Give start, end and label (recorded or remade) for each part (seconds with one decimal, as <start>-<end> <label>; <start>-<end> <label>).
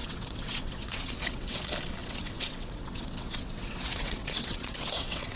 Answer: 0.0-1.6 remade; 1.6-2.0 recorded; 2.0-5.4 remade